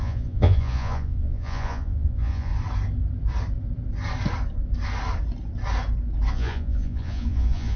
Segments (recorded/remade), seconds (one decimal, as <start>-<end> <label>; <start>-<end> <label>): 0.0-2.5 remade; 2.5-6.3 recorded; 6.3-7.8 remade